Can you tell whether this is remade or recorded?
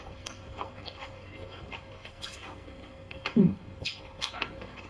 remade